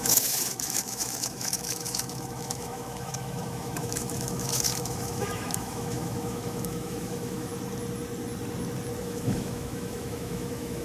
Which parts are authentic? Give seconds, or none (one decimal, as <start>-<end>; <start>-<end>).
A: 7.5-9.0